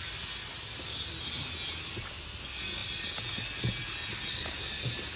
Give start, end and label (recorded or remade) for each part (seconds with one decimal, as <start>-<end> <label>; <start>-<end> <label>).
0.0-5.2 recorded